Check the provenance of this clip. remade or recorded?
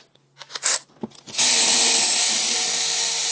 recorded